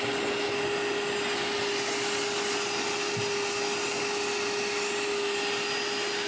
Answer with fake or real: real